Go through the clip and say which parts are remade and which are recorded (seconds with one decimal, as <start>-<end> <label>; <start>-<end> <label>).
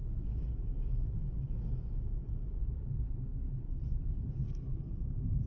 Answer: 0.0-2.6 recorded; 2.6-4.8 remade; 4.8-5.5 recorded